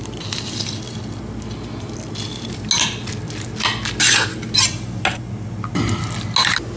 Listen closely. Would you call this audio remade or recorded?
recorded